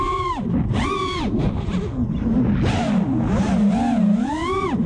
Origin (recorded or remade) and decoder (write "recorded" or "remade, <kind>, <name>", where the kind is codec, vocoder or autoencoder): recorded